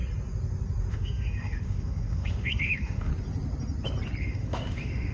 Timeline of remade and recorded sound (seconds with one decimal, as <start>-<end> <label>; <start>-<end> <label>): 0.0-0.9 recorded; 0.9-3.1 remade; 3.1-4.2 recorded; 4.2-5.1 remade